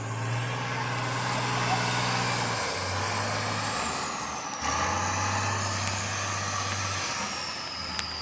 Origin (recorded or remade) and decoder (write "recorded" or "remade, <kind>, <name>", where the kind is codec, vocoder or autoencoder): recorded